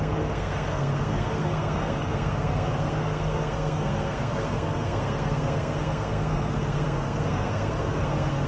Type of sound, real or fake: fake